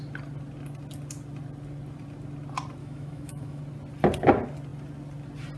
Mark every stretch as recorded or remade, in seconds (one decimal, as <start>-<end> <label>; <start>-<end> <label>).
0.0-2.8 recorded; 2.8-3.6 remade; 3.6-5.6 recorded